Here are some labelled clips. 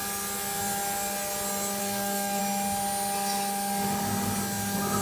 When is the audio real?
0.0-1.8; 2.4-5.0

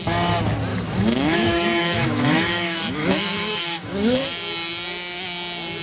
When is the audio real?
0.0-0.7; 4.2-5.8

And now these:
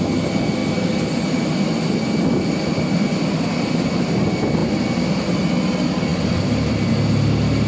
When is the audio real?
0.0-7.7

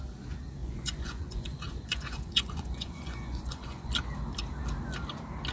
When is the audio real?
0.0-0.6; 3.9-5.5

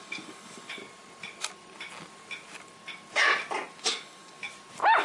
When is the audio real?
0.8-3.8; 4.4-5.0

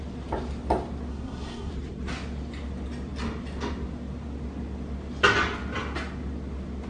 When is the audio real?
0.0-1.1; 1.7-6.9

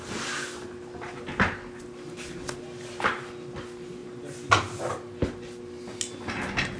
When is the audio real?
0.0-6.8

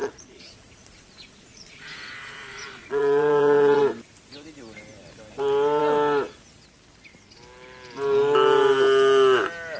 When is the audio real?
3.8-9.8